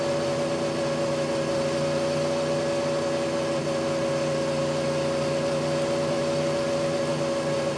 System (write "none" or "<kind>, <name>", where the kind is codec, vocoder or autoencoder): none